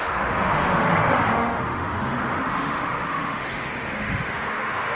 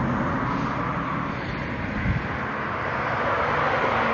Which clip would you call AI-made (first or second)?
first